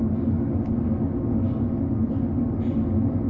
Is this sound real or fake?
real